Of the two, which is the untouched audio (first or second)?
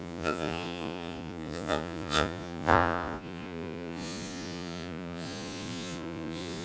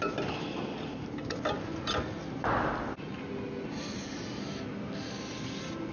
second